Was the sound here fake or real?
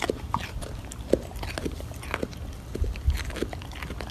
real